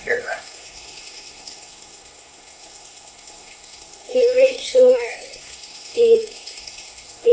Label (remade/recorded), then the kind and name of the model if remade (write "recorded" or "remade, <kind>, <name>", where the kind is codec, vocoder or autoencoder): remade, codec, SNAC